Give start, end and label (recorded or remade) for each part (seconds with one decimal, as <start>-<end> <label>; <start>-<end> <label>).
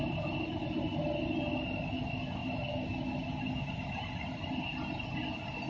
0.0-5.7 recorded